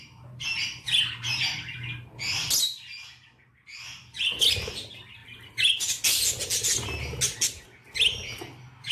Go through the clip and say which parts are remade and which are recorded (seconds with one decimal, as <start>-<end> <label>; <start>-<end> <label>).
0.0-8.9 recorded